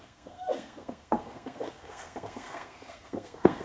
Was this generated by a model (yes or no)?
yes